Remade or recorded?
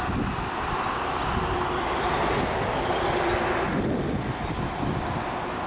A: recorded